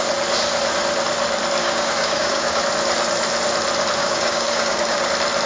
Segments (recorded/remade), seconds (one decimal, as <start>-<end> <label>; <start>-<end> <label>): 0.0-1.6 recorded; 1.6-2.6 remade; 2.6-4.0 recorded; 4.0-5.1 remade; 5.1-5.5 recorded